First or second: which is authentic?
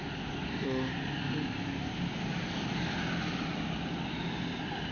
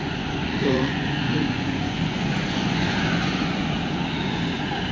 first